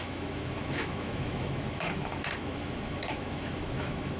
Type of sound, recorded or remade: remade